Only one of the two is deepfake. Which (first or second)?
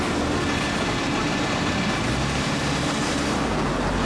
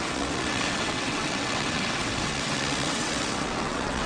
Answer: second